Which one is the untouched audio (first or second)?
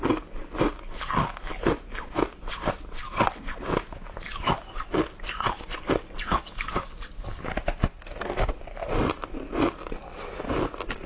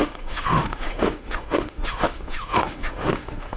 first